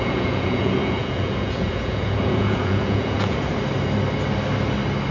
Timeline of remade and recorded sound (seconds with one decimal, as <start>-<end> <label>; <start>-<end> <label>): 0.0-3.5 remade; 3.5-5.1 recorded